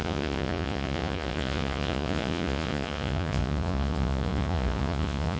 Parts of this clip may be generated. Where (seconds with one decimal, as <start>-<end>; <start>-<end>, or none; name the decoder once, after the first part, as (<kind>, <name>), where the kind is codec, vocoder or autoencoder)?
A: 0.0-5.4 (vocoder, Vocos)

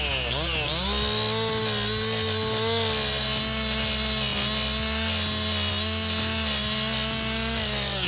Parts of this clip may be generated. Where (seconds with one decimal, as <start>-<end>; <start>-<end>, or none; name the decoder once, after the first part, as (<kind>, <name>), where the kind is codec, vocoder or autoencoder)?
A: none

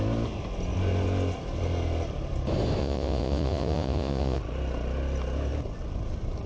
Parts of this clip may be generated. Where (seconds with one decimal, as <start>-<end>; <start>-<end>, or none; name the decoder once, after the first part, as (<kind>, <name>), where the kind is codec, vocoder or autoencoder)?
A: 2.8-4.4 (vocoder, Vocos)

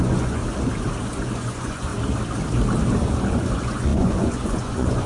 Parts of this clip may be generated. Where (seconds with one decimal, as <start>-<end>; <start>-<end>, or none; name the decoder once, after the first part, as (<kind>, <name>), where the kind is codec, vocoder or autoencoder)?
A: 0.0-0.4 (vocoder, Vocos); 1.0-1.9; 3.0-5.1

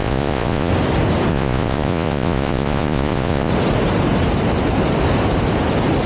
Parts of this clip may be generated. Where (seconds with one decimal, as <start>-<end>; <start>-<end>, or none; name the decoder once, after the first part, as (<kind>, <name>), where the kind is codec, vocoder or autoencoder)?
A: 0.0-0.7 (vocoder, Vocos); 1.3-3.5